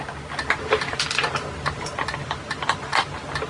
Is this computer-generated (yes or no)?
no